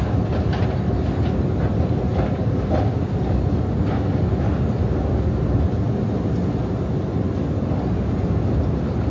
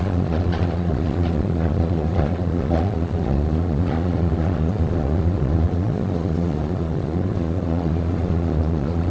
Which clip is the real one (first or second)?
first